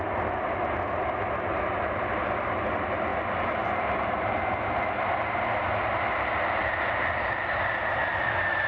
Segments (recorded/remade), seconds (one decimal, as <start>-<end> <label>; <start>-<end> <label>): 0.0-8.7 recorded